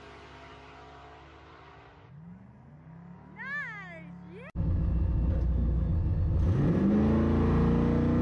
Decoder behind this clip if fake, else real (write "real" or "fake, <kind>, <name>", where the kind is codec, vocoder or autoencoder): real